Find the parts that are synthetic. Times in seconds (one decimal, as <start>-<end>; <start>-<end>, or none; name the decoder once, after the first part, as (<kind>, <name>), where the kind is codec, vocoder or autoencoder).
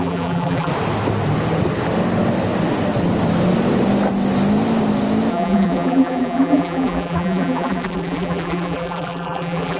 0.0-0.7 (vocoder, BigVGAN v2); 5.3-9.8